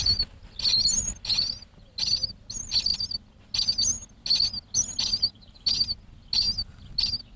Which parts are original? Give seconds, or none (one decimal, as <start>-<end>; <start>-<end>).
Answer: 0.0-7.4